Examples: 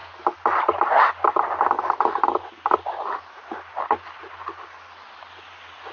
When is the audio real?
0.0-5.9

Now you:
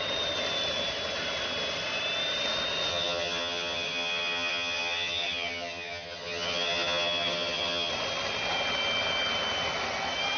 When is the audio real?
0.0-2.9; 7.9-10.4

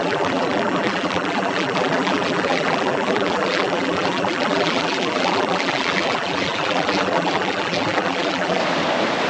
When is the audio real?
8.6-9.3